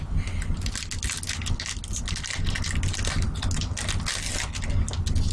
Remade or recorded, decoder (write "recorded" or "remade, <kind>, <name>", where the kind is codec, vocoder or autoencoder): recorded